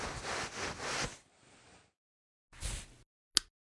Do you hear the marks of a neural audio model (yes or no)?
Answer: no